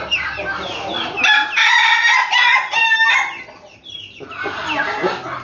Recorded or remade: recorded